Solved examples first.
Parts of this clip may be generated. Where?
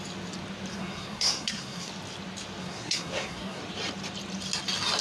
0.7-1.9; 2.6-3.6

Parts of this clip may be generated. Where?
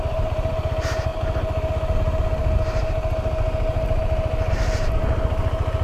0.0-1.1; 4.5-5.8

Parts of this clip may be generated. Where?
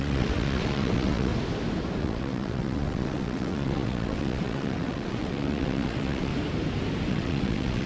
0.0-1.3; 2.0-6.3; 7.1-7.9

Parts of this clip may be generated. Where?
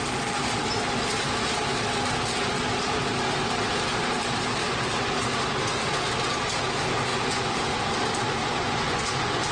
4.6-5.1; 7.1-7.8; 8.4-9.5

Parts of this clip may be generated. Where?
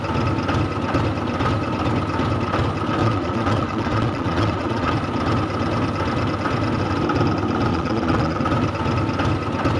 3.0-4.9; 7.7-8.4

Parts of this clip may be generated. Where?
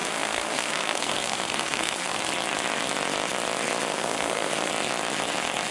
0.0-2.2; 3.9-4.7